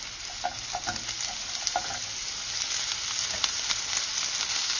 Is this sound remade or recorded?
recorded